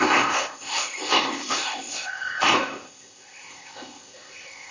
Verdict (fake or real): fake